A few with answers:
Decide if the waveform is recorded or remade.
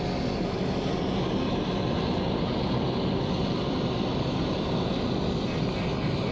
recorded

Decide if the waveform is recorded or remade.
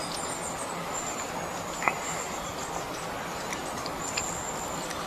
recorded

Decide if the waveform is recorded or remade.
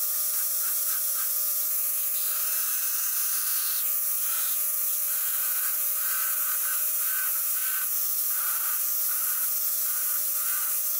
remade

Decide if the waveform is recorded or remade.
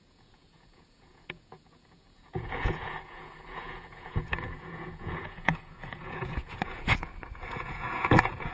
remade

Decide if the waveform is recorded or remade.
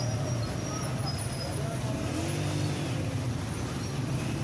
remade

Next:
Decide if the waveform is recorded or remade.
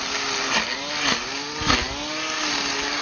recorded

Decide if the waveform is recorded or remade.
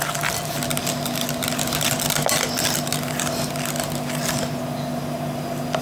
recorded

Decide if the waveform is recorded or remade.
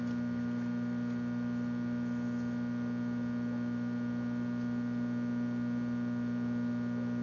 recorded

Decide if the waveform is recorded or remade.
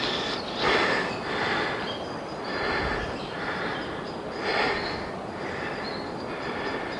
recorded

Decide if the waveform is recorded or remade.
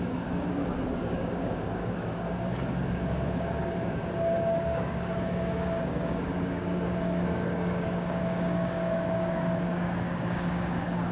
remade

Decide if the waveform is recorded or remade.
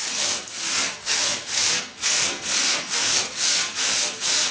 remade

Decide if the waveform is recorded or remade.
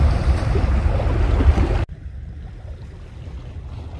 recorded